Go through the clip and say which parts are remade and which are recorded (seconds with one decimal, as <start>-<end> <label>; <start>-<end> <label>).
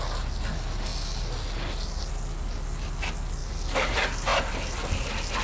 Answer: 0.0-5.4 recorded